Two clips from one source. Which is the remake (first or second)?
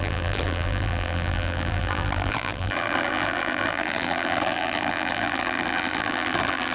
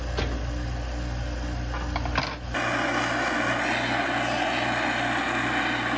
first